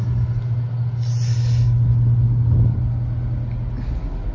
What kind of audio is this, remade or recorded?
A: recorded